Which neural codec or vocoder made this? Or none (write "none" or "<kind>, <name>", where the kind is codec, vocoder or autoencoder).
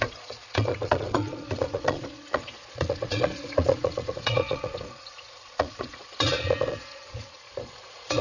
vocoder, Vocos